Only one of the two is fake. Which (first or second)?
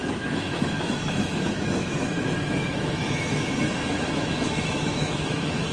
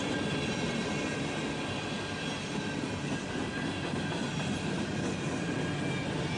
first